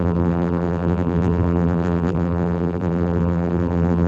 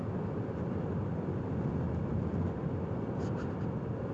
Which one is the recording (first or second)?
second